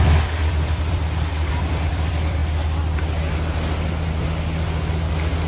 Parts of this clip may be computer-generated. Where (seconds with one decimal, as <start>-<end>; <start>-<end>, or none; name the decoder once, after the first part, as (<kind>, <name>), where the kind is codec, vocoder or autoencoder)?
0.0-2.4 (vocoder, BigVGAN v2); 4.9-5.5